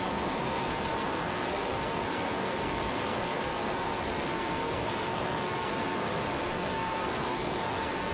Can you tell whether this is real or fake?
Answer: fake